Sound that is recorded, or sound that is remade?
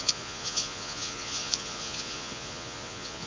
remade